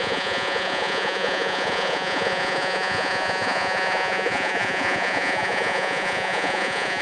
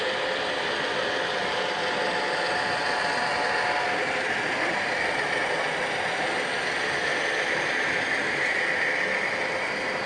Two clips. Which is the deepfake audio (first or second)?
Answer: first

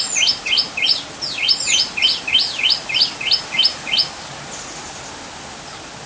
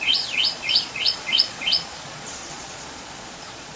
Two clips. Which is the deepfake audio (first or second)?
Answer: second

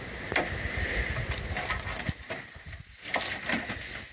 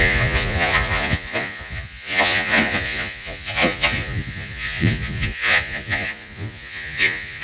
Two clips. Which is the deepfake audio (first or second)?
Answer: second